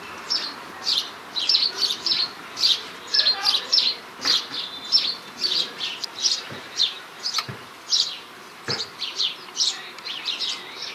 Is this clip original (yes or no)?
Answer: no